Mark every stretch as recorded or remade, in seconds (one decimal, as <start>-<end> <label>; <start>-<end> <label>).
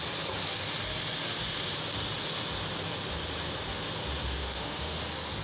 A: 0.0-4.4 recorded; 4.4-5.0 remade; 5.0-5.4 recorded